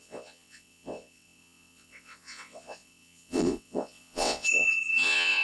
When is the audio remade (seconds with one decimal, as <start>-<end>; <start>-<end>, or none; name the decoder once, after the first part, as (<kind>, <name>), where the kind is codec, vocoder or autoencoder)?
0.0-5.4 (vocoder, WaveNeXt)